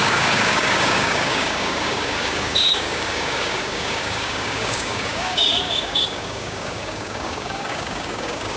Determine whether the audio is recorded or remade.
remade